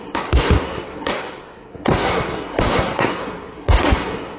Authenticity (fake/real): fake